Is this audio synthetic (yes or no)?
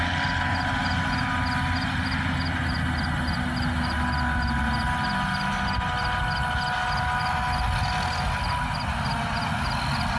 no